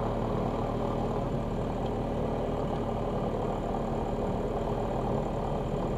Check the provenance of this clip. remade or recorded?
recorded